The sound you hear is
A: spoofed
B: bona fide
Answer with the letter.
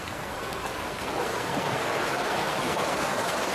A